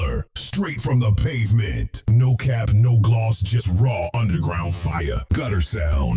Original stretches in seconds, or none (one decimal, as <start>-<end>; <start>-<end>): 0.0-4.3; 5.0-6.2